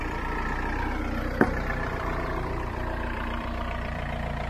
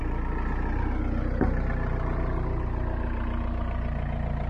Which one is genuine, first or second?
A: second